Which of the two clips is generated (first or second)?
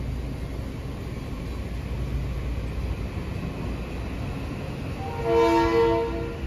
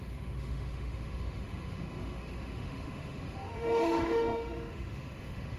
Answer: second